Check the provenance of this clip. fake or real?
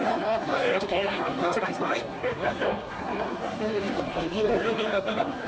fake